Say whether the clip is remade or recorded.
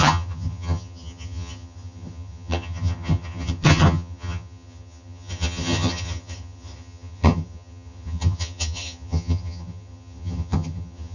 remade